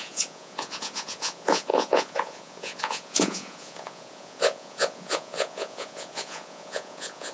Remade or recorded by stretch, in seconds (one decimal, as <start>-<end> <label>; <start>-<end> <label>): 0.0-7.3 remade